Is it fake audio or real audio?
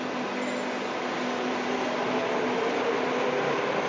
real